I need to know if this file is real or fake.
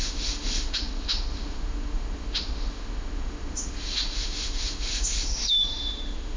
fake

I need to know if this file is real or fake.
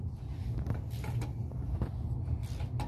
real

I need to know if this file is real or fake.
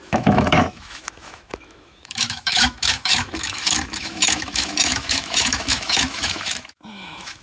fake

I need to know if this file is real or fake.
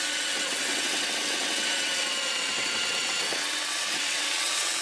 fake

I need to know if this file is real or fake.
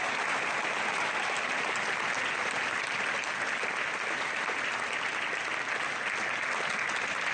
real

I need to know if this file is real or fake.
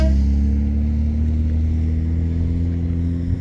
real